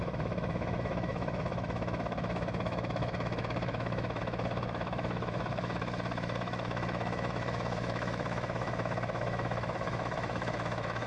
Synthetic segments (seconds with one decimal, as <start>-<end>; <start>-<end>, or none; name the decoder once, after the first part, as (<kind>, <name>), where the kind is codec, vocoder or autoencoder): 0.0-11.1 (autoencoder, DAC-VAE)